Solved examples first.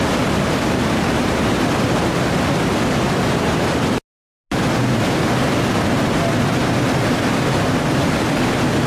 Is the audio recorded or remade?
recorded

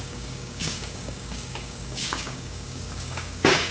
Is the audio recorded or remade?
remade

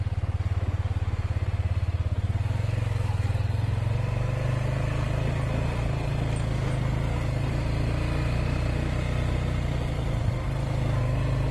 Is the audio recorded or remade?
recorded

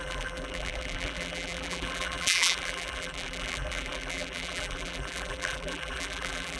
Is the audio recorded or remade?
remade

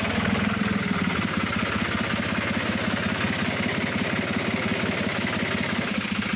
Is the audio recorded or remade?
recorded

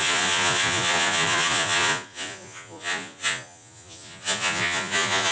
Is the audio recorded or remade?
remade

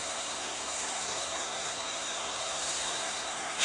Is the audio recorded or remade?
remade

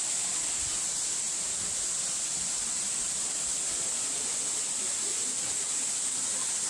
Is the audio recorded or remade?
recorded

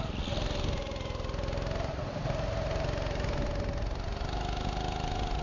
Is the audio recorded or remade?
recorded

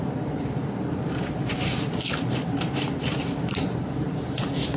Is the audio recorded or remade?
remade